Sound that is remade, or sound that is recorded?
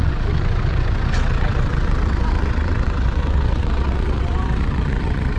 remade